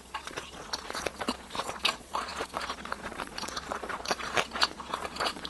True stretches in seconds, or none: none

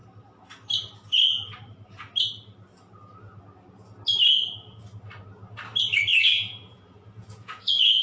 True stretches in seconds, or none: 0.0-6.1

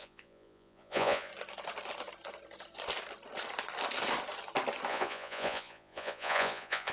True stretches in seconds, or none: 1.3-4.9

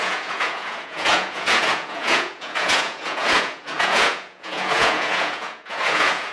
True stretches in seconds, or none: none

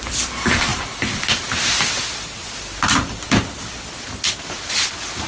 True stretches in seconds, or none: 0.0-5.3

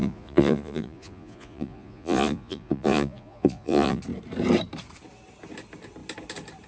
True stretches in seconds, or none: 4.0-6.7